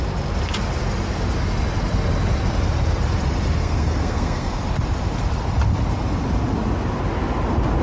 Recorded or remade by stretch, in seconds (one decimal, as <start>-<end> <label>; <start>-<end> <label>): 0.0-3.6 recorded; 3.6-4.6 remade; 4.6-7.8 recorded